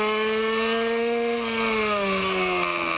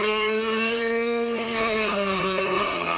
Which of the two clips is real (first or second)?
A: first